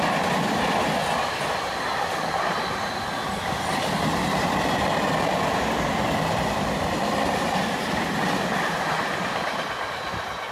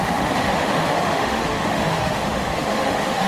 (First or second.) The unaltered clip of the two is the first